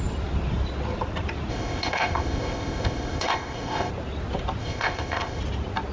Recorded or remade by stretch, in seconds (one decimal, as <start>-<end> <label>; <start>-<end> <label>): 0.0-1.5 recorded; 1.5-3.9 remade; 3.9-4.6 recorded; 4.6-5.4 remade; 5.4-5.9 recorded